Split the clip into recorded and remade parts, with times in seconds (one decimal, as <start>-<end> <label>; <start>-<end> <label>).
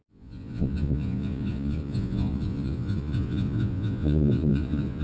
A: 0.0-5.0 remade